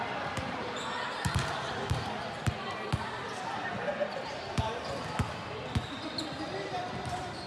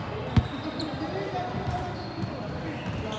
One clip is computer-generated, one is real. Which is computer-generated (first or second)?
first